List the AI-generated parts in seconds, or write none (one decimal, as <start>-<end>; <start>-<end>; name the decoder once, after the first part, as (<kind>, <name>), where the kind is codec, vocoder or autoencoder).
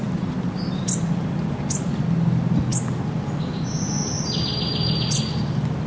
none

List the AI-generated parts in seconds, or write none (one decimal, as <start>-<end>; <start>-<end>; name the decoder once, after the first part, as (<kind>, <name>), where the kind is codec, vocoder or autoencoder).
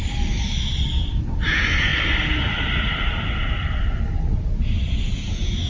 1.1-1.9 (vocoder, Vocos); 4.9-5.7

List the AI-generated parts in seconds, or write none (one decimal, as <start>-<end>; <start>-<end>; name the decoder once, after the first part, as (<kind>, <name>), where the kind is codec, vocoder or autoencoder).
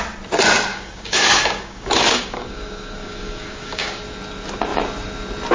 0.7-4.0 (codec, DAC)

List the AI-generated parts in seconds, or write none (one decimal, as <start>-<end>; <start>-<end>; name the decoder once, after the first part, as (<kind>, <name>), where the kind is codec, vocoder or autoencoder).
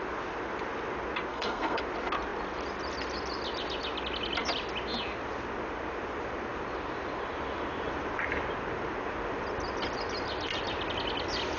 1.3-1.8 (codec, SNAC)